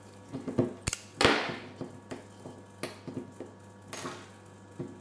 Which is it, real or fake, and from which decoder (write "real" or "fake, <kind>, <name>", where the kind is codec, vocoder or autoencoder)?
real